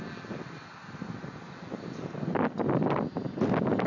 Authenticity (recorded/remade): recorded